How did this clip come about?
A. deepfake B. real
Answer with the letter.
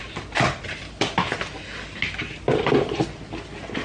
B